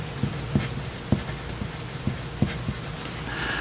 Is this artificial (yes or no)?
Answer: no